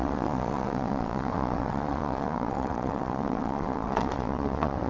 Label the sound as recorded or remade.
remade